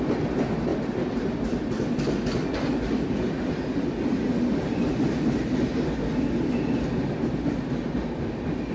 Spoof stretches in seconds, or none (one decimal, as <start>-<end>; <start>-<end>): none